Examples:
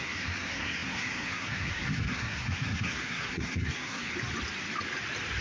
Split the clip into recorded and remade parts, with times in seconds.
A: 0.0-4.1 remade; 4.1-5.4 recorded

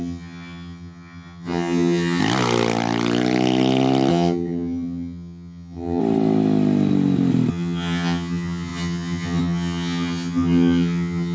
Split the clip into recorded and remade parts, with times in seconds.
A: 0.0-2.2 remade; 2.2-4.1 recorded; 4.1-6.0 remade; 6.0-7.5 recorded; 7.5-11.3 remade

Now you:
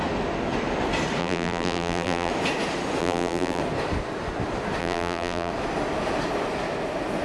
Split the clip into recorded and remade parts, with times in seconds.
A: 0.0-1.2 recorded; 1.2-2.3 remade; 2.3-3.0 recorded; 3.0-3.6 remade; 3.6-4.8 recorded; 4.8-5.5 remade; 5.5-7.2 recorded

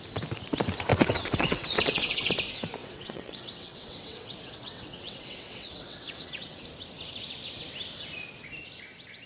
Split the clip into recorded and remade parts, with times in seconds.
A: 0.0-0.9 recorded; 0.9-2.3 remade; 2.3-2.8 recorded; 2.8-6.6 remade; 6.6-9.3 recorded